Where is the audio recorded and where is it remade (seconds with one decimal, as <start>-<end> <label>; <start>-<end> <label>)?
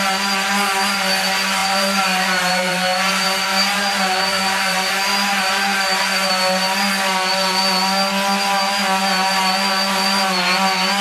0.0-1.6 recorded; 1.6-6.3 remade; 6.3-11.0 recorded